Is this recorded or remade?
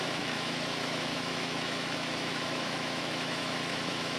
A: remade